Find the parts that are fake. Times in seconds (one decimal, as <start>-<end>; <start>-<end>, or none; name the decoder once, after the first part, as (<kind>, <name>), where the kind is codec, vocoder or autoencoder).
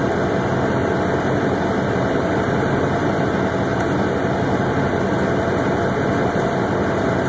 0.8-3.3 (vocoder, BigVGAN v2); 3.7-7.3